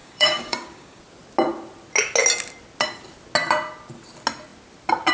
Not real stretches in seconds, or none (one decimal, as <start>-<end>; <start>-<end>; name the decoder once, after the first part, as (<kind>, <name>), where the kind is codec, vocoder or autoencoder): 0.0-1.0 (codec, DAC)